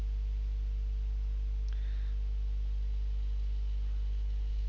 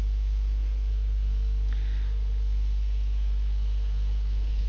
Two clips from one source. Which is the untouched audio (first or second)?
first